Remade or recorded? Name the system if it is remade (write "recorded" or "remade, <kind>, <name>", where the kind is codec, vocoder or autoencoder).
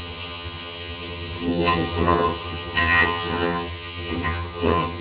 remade, vocoder, HiFi-GAN